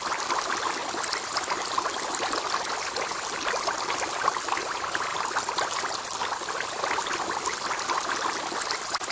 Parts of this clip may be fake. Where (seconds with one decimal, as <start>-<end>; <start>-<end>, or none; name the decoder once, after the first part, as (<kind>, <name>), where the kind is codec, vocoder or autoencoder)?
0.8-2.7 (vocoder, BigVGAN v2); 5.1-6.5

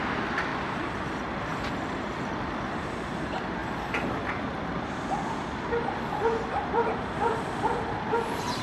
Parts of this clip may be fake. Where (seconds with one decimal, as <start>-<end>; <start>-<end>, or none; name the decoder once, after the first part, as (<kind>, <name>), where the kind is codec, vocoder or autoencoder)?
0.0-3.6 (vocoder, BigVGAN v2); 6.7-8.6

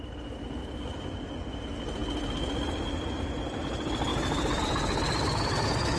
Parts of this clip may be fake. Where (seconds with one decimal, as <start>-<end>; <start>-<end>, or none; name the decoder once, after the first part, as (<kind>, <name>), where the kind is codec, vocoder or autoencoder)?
0.0-2.0 (vocoder, BigVGAN v2); 3.6-4.1; 4.6-6.0

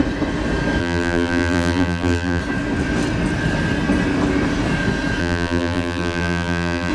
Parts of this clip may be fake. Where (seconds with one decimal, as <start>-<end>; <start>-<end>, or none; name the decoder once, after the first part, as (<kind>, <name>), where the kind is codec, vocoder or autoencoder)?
0.8-2.4 (vocoder, BigVGAN v2); 5.2-6.9